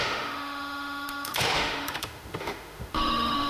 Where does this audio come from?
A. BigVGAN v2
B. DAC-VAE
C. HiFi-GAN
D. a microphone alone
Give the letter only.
B